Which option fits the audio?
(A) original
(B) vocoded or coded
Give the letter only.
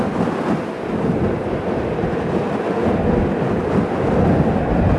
A